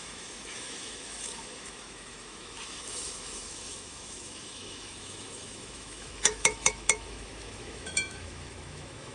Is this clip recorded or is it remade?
remade